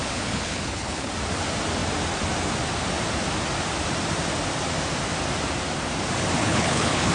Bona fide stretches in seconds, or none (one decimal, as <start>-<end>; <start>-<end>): 1.1-6.4